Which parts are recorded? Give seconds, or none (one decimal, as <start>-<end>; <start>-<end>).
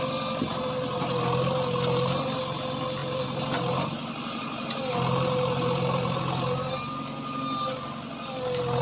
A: 0.0-3.0; 6.2-8.8